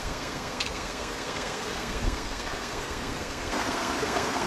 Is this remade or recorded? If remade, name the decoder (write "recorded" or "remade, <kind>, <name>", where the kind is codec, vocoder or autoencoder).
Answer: remade, codec, SNAC